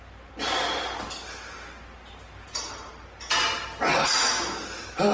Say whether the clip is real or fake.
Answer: real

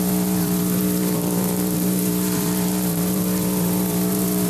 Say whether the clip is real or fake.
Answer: fake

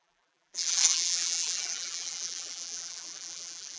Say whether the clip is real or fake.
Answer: fake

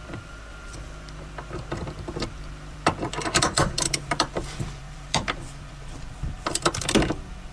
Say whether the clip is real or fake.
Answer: fake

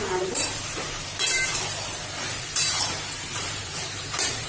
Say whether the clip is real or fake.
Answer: fake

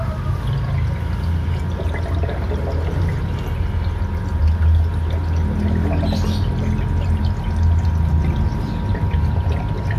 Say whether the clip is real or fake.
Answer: real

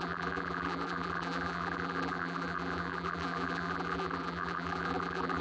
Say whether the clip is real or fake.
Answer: fake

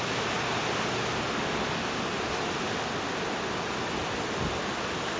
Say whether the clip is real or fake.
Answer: real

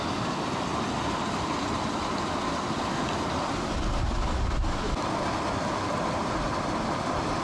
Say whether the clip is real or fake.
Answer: real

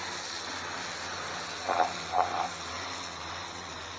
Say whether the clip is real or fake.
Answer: real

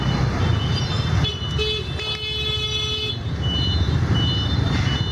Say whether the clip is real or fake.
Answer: real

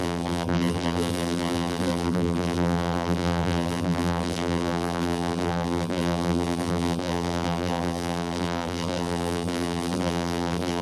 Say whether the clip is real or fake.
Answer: fake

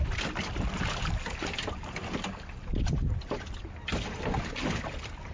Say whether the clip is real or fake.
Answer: real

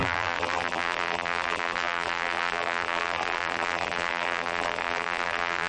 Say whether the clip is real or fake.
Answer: fake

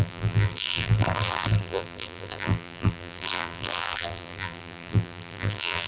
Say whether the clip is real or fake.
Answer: fake